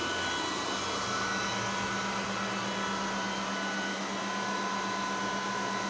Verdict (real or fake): real